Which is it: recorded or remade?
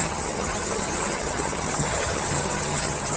remade